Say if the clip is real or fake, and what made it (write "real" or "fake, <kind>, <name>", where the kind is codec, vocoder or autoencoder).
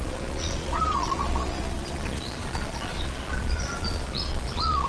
fake, vocoder, Vocos